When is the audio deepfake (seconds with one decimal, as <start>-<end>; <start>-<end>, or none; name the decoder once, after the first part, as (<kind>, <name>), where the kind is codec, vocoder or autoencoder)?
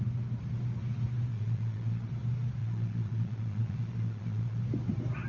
1.3-2.1 (vocoder, Vocos); 2.6-4.6